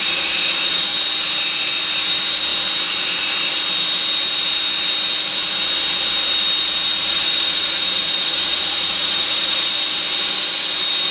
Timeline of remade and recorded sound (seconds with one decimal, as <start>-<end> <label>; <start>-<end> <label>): 0.0-0.8 remade; 0.8-7.0 recorded; 7.0-9.7 remade; 9.7-11.1 recorded